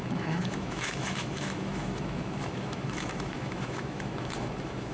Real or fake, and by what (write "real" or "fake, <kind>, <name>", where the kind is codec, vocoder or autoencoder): fake, autoencoder, DAC-VAE